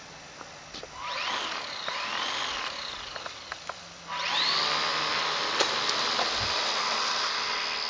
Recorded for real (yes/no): yes